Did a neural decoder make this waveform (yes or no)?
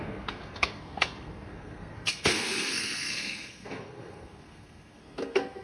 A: yes